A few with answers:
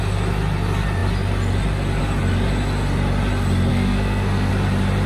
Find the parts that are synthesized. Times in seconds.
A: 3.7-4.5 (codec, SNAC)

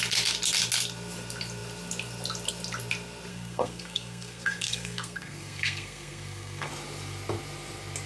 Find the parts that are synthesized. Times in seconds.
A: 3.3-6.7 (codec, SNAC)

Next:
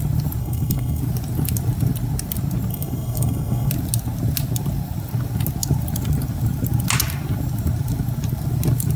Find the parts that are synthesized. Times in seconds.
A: 0.4-1.0 (codec, SNAC); 2.7-3.7